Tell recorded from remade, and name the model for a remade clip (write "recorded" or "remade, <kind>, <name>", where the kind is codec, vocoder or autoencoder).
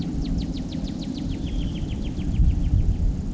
recorded